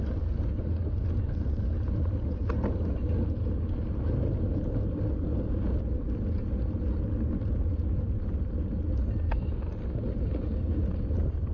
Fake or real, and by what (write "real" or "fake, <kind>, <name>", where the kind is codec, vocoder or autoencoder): real